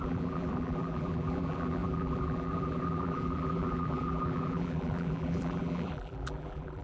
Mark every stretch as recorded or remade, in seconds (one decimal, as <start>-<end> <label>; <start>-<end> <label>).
0.0-6.8 remade